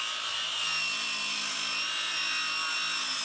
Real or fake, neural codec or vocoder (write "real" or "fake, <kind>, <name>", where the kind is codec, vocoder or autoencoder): real